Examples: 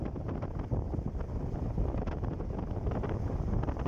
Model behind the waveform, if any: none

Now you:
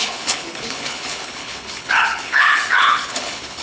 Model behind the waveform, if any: codec, HILCodec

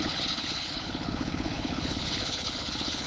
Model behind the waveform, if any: codec, HILCodec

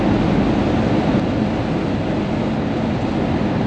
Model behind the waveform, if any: none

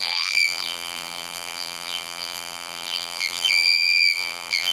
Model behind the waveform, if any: vocoder, BigVGAN v2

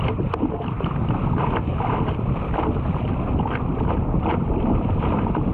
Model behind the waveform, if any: none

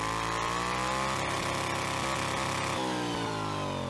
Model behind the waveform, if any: none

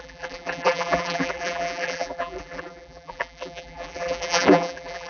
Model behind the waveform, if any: vocoder, BigVGAN v2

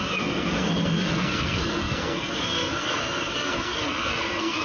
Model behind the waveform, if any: codec, SNAC